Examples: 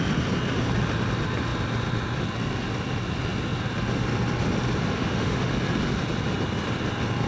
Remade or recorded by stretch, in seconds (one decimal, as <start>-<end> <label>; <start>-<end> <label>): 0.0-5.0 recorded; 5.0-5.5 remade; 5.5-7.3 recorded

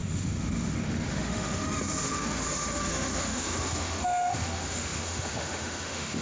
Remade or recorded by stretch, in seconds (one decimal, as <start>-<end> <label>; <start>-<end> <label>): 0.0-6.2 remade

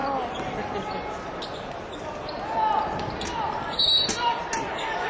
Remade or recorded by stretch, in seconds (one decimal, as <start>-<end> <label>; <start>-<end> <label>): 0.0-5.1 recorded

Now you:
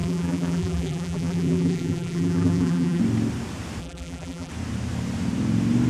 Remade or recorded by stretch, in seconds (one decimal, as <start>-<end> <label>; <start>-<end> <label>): 0.0-3.0 remade; 3.0-3.8 recorded; 3.8-4.5 remade; 4.5-5.9 recorded